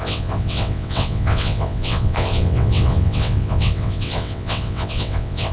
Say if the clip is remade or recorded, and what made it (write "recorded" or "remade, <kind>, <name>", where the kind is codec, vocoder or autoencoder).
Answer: remade, vocoder, WaveNeXt